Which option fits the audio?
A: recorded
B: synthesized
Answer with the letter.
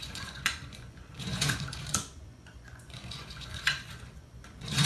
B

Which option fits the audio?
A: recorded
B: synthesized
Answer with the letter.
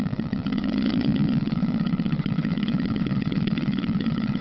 B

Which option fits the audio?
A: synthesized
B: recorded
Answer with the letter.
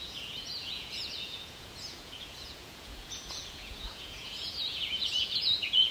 A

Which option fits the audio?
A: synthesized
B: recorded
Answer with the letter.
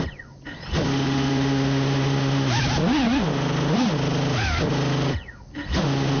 B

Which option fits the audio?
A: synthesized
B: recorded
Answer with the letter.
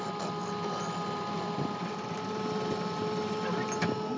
B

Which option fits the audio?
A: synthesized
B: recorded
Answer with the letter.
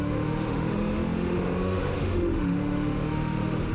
A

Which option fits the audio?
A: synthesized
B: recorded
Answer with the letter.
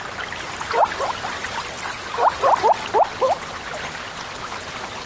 B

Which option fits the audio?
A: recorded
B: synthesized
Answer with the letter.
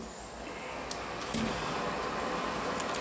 A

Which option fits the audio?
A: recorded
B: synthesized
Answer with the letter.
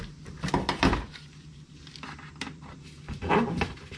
A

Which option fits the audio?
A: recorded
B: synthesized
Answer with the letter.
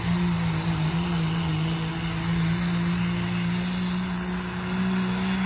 A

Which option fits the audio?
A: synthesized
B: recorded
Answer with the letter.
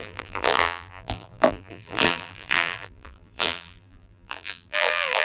A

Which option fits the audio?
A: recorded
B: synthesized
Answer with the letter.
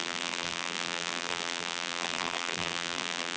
B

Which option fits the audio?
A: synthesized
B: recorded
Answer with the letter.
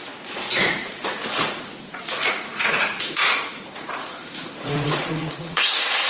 A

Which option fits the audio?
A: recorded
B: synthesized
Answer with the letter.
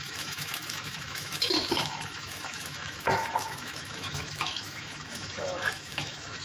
B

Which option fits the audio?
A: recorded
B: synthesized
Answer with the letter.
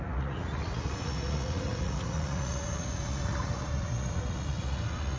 B